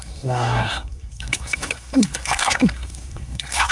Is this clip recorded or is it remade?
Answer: remade